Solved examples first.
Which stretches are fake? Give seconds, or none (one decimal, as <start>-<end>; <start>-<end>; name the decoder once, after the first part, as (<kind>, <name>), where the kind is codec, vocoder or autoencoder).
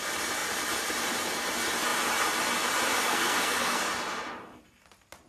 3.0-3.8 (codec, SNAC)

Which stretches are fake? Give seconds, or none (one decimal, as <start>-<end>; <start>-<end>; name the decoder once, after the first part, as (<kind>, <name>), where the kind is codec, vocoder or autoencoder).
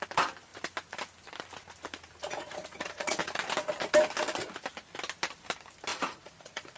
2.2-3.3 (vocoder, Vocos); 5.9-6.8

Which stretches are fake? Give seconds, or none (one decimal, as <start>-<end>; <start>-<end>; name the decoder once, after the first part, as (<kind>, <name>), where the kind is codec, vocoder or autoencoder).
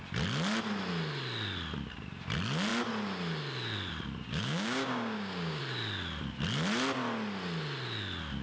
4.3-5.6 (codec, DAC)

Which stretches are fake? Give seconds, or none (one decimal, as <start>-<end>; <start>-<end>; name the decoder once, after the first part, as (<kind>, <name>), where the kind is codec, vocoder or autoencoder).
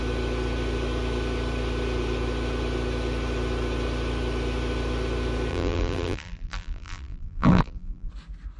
5.5-8.1 (vocoder, BigVGAN v2)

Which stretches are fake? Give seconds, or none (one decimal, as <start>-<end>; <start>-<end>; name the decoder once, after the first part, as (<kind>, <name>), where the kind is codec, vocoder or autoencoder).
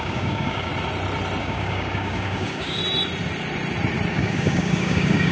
0.0-0.7 (codec, DAC); 1.4-2.8; 4.1-5.3